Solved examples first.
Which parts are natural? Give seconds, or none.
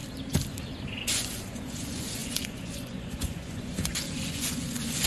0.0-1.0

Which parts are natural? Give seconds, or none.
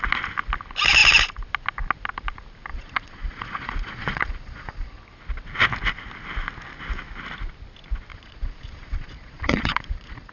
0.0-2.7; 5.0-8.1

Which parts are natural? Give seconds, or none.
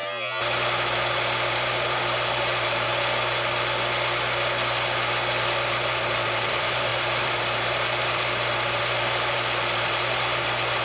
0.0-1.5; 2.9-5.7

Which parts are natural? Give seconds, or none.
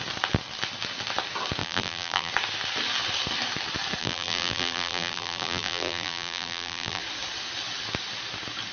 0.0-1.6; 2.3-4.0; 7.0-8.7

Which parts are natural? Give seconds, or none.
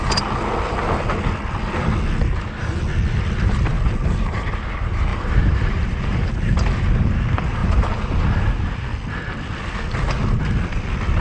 0.0-5.1; 6.3-11.2